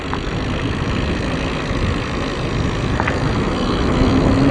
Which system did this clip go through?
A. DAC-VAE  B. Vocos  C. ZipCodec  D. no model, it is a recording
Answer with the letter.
D